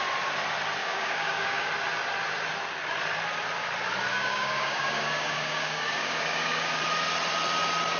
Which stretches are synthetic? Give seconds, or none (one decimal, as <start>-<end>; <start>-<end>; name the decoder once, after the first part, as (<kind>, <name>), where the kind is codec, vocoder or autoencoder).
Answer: 0.8-1.7 (codec, DAC); 4.1-6.8